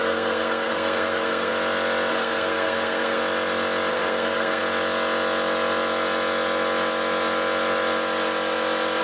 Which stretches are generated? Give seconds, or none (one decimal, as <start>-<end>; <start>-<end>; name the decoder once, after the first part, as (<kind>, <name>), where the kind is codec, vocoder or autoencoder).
0.0-1.5 (codec, SNAC); 2.1-3.2; 3.9-4.6